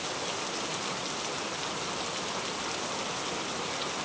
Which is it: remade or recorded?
recorded